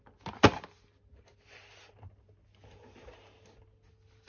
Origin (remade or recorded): recorded